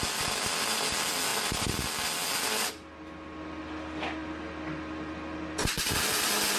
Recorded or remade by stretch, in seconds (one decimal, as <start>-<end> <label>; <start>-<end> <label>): 0.0-6.6 recorded